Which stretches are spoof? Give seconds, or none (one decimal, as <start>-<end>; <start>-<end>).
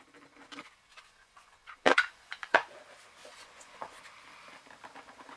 0.9-2.7; 3.2-4.0